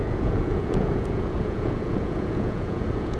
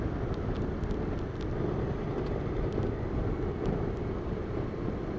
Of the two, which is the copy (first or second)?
first